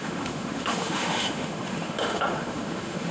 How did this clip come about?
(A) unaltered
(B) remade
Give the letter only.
B